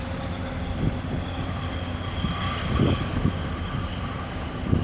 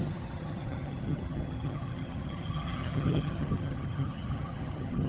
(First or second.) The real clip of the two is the first